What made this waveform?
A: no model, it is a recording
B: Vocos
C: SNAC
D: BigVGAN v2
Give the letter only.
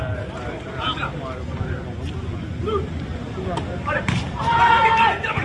A